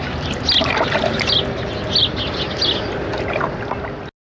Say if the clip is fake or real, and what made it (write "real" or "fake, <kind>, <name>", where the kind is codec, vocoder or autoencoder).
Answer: real